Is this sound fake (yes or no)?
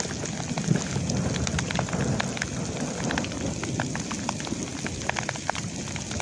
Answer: no